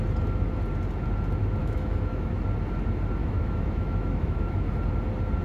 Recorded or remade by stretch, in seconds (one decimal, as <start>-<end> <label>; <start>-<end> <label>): 0.0-1.6 recorded; 1.6-2.3 remade; 2.3-3.2 recorded; 3.2-4.7 remade; 4.7-5.4 recorded